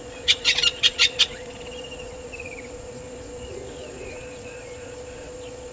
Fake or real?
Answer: fake